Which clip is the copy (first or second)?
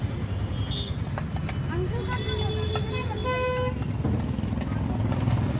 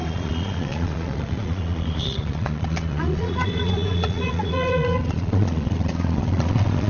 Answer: second